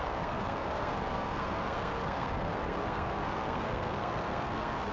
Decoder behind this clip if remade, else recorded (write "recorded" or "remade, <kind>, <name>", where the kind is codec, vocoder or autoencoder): remade, codec, SNAC